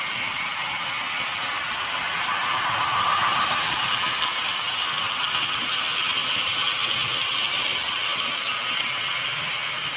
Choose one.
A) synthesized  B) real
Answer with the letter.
B